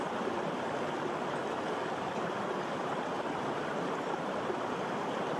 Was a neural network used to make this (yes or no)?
yes